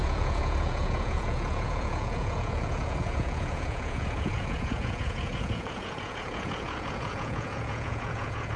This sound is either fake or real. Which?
fake